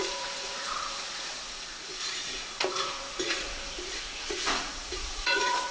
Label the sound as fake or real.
fake